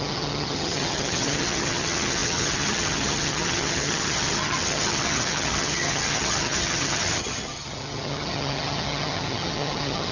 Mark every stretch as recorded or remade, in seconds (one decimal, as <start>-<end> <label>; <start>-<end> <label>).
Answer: 0.0-10.1 remade